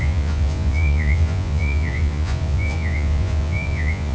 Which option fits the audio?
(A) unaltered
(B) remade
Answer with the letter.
B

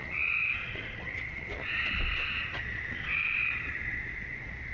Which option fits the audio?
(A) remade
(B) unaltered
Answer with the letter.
A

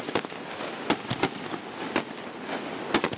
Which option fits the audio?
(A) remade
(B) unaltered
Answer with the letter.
B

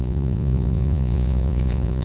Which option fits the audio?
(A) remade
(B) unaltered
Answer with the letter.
A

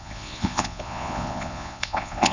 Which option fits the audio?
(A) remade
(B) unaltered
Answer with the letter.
A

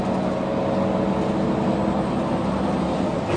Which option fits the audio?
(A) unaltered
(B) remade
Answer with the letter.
A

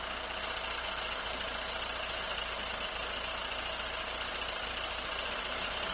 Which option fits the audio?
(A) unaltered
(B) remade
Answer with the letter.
A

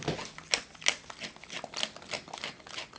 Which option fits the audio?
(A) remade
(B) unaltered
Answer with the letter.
B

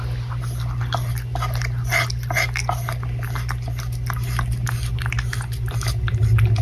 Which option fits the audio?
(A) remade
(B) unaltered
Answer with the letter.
B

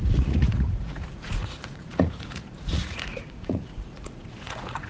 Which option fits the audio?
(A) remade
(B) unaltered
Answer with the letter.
A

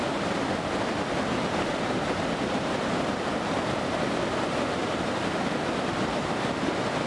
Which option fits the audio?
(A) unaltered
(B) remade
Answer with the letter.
A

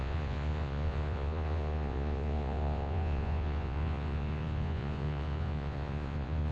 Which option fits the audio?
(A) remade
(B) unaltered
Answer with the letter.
A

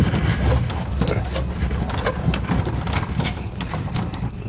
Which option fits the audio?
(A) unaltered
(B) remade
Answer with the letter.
A